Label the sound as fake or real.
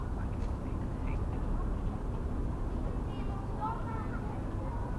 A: real